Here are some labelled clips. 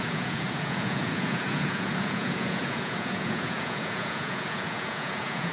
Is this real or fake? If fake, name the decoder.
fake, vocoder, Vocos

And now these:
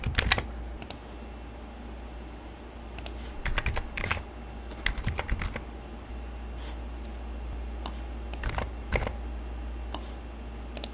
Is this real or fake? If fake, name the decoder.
real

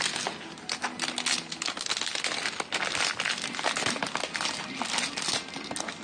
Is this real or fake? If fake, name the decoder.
real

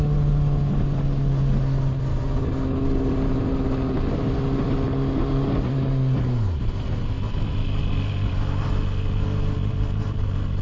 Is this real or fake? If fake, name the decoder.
real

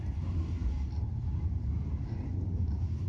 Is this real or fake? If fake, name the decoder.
real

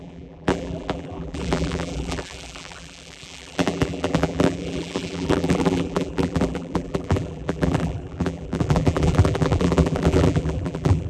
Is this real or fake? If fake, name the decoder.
fake, vocoder, BigVGAN v2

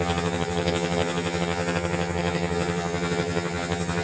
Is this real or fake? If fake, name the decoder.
fake, vocoder, HiFi-GAN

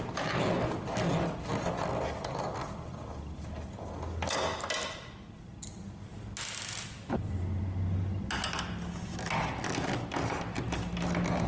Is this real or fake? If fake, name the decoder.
real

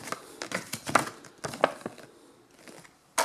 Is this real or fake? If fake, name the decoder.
real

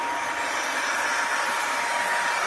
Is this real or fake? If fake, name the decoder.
fake, vocoder, BigVGAN v2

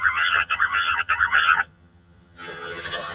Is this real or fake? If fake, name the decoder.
fake, vocoder, HiFi-GAN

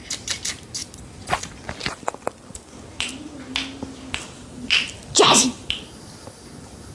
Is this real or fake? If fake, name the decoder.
real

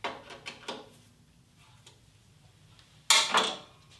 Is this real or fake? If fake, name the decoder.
real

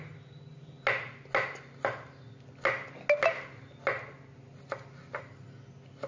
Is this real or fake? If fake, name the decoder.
real